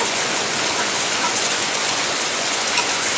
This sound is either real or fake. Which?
fake